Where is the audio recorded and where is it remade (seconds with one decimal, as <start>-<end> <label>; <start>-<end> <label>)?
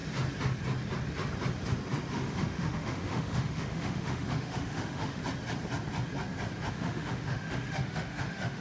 0.0-2.1 recorded; 2.1-5.2 remade; 5.2-6.7 recorded; 6.7-8.6 remade